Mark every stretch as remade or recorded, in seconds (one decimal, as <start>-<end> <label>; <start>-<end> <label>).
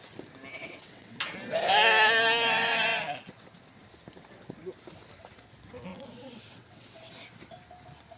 0.0-0.6 recorded; 0.6-1.2 remade; 1.2-5.9 recorded; 5.9-7.1 remade; 7.1-8.2 recorded